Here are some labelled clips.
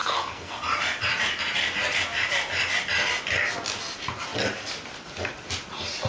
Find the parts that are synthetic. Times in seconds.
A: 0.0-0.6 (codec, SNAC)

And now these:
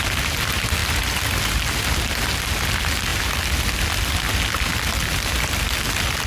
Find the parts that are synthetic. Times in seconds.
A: none

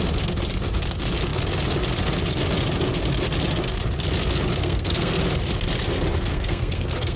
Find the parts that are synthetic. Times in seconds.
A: 4.6-5.2 (codec, SNAC); 6.3-7.2